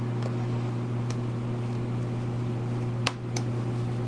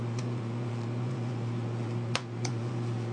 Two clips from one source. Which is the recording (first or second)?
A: first